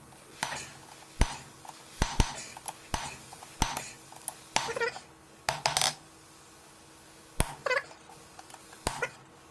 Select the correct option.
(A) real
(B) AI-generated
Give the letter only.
A